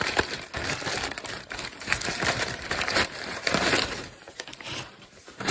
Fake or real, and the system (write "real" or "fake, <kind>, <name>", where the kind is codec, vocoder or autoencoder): fake, vocoder, BigVGAN v2